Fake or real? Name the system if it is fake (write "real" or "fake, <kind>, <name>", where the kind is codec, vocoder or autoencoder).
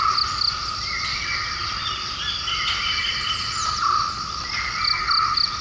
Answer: real